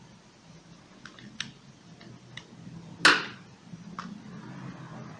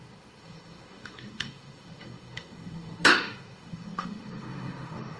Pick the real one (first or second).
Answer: first